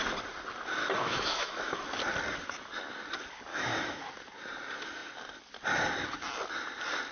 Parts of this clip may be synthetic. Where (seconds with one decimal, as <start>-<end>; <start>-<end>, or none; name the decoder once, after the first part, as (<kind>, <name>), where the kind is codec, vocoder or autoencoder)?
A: 0.8-1.8 (autoencoder, DAC-VAE); 3.5-4.0